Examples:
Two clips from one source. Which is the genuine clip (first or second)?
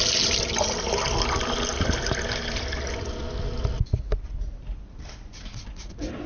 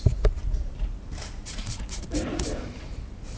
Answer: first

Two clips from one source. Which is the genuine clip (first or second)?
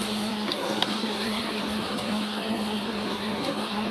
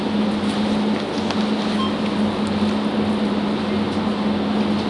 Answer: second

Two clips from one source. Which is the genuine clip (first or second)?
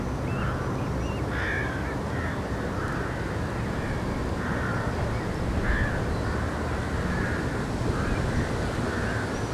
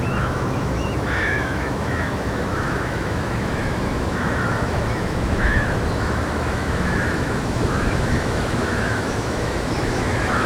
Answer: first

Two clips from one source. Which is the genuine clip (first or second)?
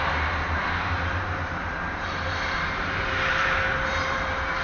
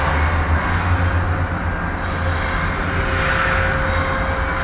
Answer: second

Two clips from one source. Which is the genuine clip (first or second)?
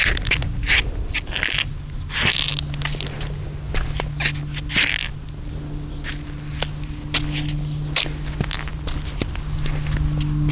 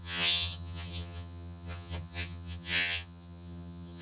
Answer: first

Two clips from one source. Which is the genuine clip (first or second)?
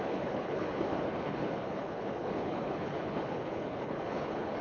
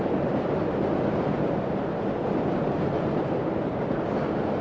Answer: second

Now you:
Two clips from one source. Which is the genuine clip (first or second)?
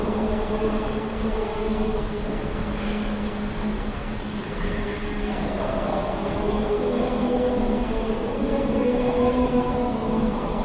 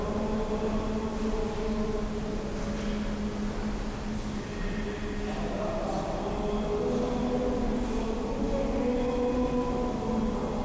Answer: second